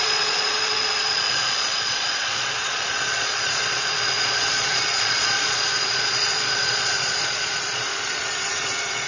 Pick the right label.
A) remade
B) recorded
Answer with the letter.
A